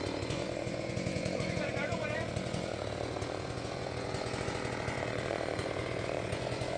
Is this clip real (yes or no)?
no